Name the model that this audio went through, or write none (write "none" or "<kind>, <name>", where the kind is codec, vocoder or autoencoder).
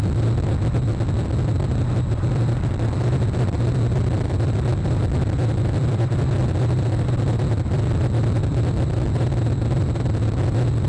vocoder, BigVGAN v2